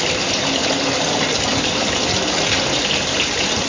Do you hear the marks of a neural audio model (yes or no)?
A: no